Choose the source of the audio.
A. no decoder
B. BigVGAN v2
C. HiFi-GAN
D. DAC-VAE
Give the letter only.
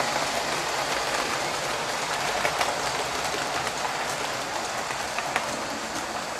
A